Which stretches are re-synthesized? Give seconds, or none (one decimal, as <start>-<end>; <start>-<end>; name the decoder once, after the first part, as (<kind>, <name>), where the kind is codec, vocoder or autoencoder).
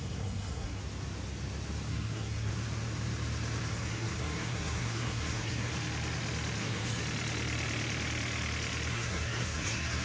0.0-0.8 (codec, SNAC); 1.9-2.5; 3.7-5.7; 6.6-7.0; 8.9-10.0